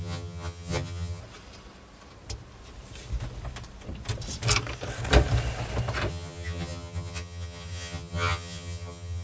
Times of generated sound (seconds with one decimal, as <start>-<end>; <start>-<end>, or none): 0.0-1.2; 6.1-9.2